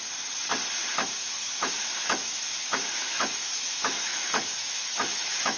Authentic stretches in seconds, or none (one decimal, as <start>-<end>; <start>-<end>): 0.0-0.9